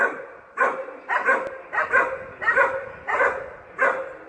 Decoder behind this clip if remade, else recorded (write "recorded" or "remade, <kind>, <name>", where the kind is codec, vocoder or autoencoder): recorded